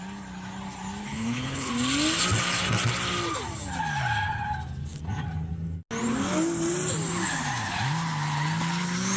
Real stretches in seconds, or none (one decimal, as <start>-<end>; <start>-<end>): 0.0-1.0; 1.7-9.2